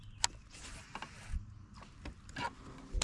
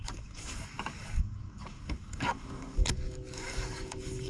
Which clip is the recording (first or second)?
first